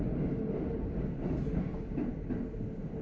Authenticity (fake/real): real